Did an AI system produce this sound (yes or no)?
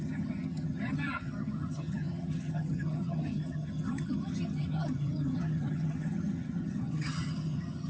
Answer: yes